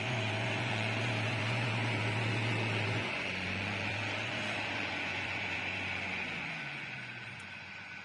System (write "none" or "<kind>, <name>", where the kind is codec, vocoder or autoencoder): vocoder, Vocos